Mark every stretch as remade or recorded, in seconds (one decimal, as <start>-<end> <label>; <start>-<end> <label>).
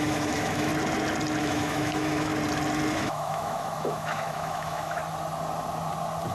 0.0-0.7 remade; 0.7-1.4 recorded; 1.4-2.3 remade; 2.3-2.9 recorded; 2.9-5.0 remade; 5.0-6.3 recorded